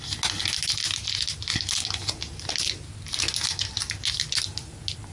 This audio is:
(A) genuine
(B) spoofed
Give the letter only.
A